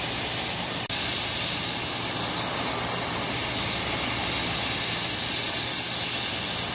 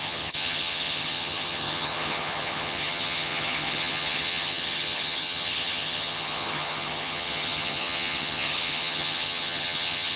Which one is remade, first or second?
second